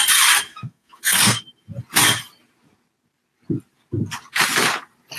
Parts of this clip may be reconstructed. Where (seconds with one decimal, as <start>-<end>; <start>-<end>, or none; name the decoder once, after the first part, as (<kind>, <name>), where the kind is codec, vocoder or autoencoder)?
0.5-1.4 (codec, SNAC)